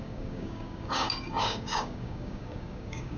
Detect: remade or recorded remade